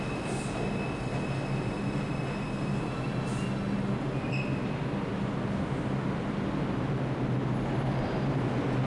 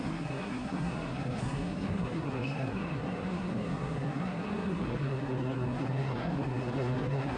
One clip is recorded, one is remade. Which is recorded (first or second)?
first